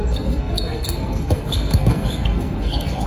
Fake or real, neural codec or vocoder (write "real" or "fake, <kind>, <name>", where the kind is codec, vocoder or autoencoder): fake, codec, SNAC